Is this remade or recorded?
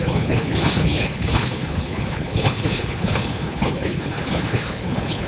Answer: remade